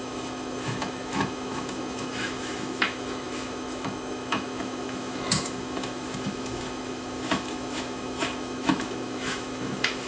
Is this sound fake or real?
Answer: fake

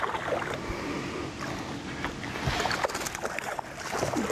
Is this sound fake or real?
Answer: real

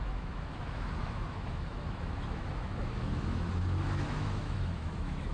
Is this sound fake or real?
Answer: fake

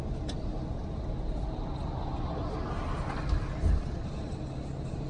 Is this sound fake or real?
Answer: real